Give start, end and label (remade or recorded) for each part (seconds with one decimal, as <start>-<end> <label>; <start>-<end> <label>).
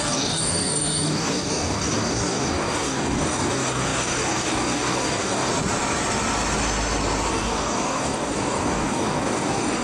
0.0-5.5 remade; 5.5-7.3 recorded; 7.3-9.8 remade